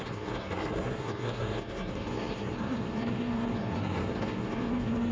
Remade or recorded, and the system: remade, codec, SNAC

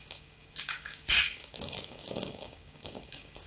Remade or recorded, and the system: remade, codec, DAC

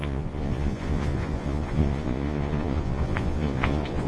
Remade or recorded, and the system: remade, vocoder, Vocos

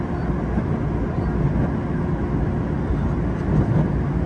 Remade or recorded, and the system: recorded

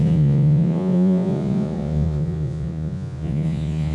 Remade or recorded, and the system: remade, vocoder, Vocos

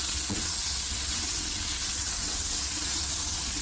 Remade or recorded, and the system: remade, vocoder, WaveNeXt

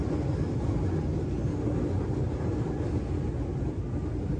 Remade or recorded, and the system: recorded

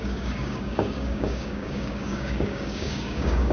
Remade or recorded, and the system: remade, codec, DAC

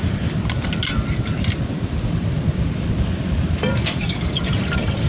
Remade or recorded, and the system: recorded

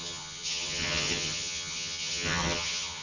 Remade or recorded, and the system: remade, vocoder, HiFi-GAN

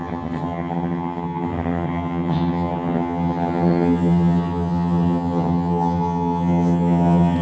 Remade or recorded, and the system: remade, vocoder, HiFi-GAN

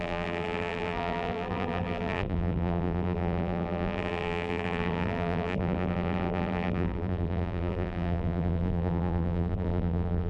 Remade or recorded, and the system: remade, vocoder, BigVGAN v2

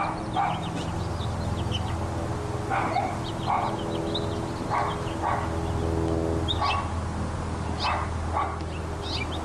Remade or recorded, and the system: recorded